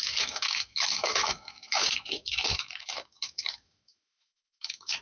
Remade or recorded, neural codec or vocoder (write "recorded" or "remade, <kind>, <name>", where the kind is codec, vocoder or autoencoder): remade, autoencoder, DAC-VAE